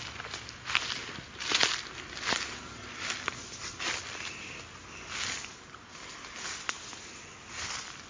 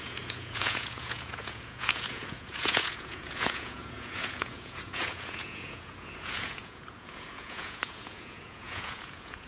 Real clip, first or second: first